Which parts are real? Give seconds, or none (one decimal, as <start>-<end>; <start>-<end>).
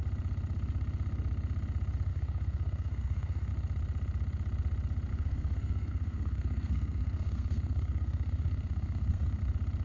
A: 0.0-2.1; 3.5-5.1; 9.4-9.8